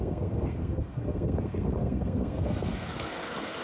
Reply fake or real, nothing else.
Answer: fake